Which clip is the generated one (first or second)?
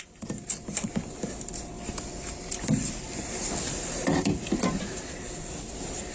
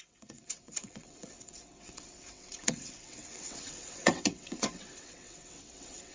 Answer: second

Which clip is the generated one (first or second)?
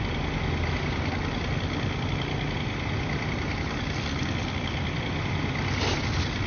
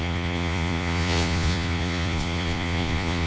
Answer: second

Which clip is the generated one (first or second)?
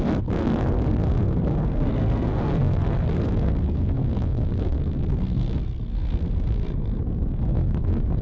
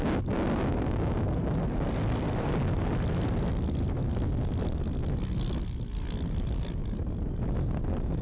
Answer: first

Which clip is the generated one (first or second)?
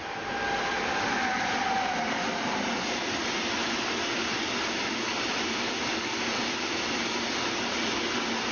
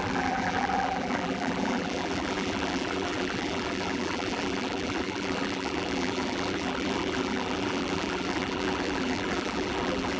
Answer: second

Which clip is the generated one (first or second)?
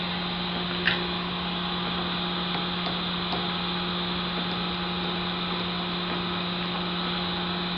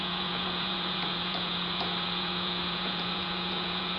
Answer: second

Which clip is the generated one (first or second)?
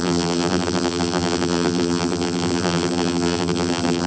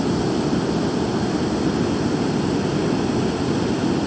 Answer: first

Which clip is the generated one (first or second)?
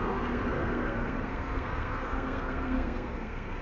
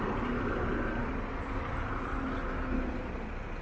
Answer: first